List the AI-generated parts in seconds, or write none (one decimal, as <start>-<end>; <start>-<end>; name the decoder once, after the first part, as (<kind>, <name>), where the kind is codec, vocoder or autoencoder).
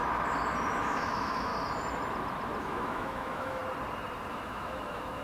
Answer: 0.8-1.5 (autoencoder, DAC-VAE); 2.6-3.6; 4.3-5.2